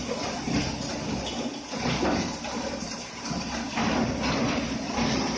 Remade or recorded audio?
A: recorded